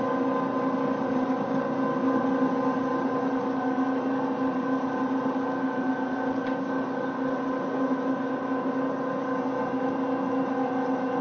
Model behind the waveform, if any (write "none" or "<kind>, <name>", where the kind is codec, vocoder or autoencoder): none